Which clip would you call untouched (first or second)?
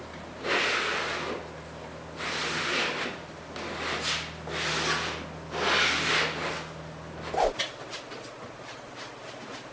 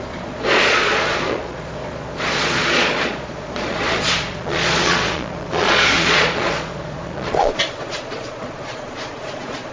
first